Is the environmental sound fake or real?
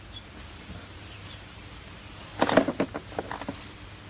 real